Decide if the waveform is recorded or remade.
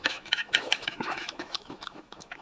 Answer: remade